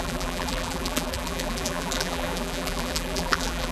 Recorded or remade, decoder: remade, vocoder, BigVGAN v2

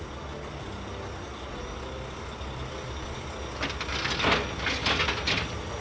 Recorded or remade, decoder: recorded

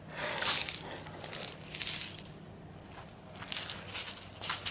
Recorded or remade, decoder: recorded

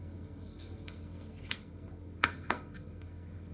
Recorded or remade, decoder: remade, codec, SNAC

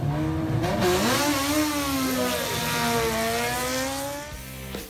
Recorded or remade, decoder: recorded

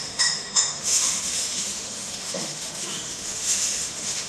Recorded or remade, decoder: remade, autoencoder, DAC-VAE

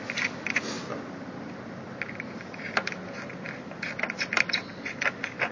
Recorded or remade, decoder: recorded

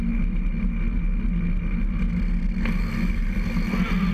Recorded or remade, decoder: recorded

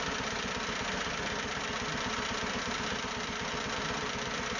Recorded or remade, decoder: recorded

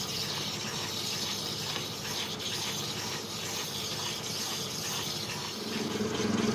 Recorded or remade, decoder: recorded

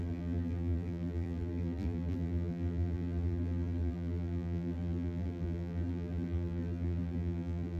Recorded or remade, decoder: remade, vocoder, BigVGAN v2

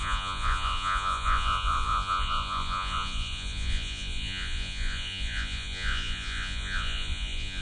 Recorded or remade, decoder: remade, vocoder, Vocos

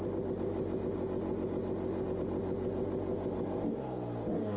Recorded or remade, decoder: recorded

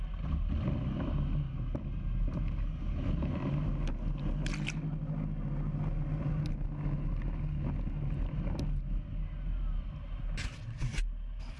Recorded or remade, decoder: recorded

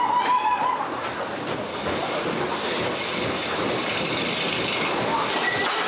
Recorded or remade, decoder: recorded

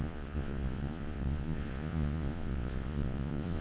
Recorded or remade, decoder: remade, vocoder, Vocos